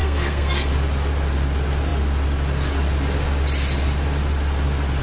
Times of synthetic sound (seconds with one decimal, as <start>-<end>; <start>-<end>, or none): 0.0-0.7